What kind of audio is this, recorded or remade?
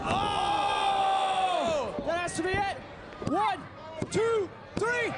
recorded